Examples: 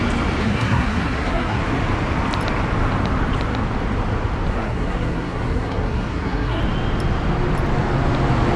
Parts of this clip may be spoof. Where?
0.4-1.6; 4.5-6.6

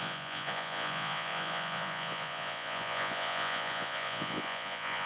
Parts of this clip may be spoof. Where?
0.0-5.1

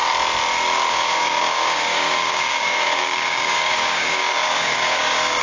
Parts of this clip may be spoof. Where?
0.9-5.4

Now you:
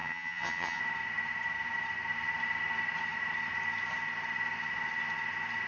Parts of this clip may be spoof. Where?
0.0-0.8

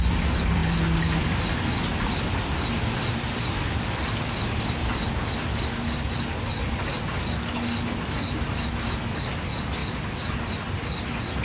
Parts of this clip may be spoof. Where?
none

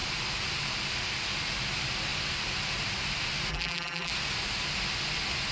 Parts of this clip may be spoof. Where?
3.5-4.1

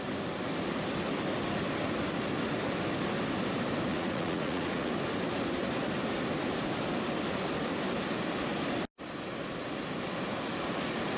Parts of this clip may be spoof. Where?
3.9-4.9